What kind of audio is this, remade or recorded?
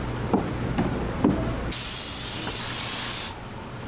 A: recorded